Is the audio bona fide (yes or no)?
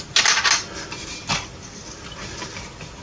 yes